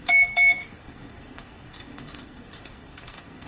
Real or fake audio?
fake